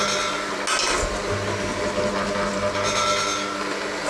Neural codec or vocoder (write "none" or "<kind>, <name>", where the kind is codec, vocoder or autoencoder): none